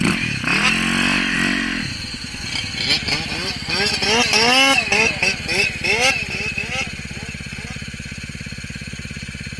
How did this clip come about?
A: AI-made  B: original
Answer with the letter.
B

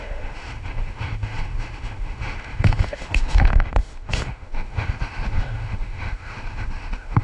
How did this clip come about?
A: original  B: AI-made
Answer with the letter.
B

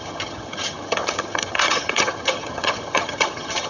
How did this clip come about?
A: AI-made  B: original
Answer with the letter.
A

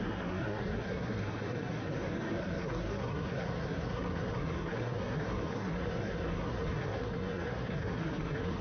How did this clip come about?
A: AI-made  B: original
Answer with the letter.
A